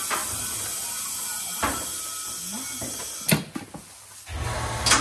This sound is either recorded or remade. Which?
recorded